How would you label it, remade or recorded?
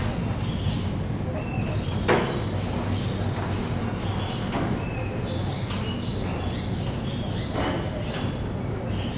recorded